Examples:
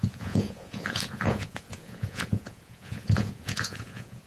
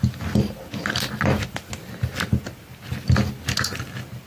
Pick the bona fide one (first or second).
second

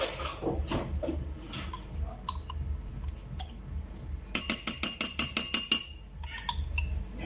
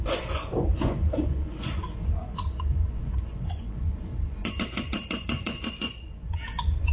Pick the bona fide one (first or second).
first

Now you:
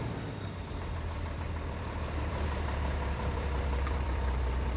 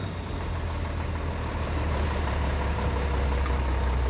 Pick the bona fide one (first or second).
second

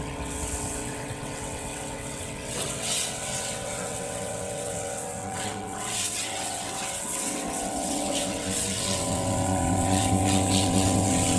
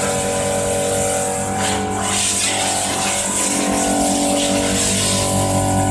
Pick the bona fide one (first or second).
second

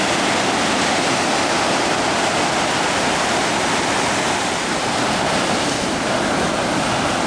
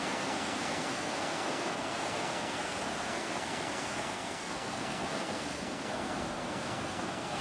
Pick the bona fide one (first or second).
first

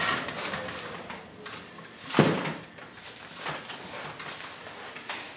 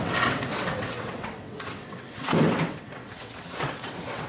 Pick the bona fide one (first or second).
first